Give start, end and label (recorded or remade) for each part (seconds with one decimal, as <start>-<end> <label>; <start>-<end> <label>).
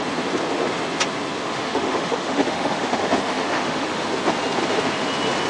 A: 0.0-1.4 recorded; 1.4-4.0 remade; 4.0-5.5 recorded